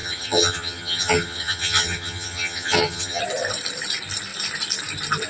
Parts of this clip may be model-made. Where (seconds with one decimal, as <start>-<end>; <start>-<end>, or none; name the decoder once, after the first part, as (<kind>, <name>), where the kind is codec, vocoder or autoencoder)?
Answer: 0.0-3.2 (vocoder, HiFi-GAN)

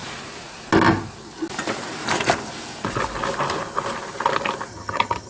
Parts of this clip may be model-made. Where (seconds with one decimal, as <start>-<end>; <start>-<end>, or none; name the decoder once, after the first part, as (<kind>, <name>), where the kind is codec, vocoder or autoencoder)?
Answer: 4.7-5.3 (vocoder, HiFi-GAN)